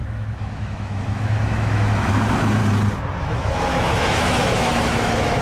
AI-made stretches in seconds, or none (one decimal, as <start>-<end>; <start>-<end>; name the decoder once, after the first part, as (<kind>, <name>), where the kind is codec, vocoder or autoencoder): 0.0-2.6 (autoencoder, DAC-VAE); 3.2-5.4